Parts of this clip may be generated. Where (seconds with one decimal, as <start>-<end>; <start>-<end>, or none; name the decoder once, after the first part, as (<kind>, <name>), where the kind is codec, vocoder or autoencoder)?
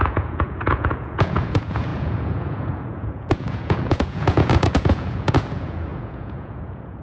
0.0-7.0 (vocoder, Vocos)